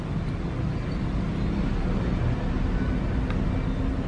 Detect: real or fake real